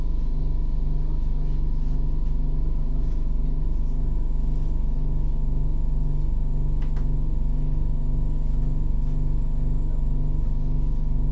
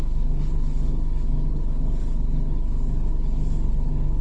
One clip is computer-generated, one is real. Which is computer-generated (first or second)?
second